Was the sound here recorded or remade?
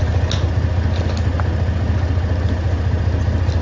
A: recorded